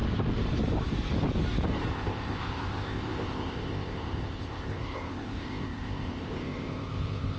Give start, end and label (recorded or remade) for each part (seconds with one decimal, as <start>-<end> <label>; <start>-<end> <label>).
0.0-1.9 recorded; 1.9-7.4 remade